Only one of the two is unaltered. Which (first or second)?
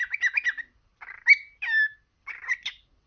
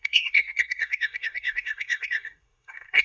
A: first